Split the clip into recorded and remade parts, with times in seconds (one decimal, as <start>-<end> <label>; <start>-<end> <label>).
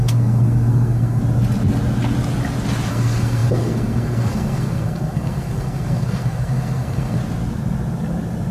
0.0-1.2 remade; 1.2-2.9 recorded; 2.9-7.2 remade; 7.2-8.5 recorded